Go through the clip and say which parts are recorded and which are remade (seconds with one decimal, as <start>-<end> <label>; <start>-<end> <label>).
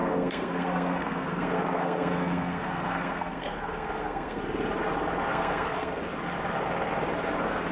0.0-4.4 remade; 4.4-5.3 recorded; 5.3-5.9 remade; 5.9-7.7 recorded